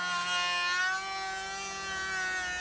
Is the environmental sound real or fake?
real